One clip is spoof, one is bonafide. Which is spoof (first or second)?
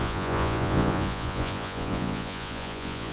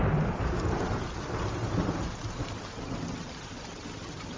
first